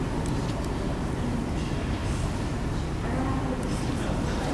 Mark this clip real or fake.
real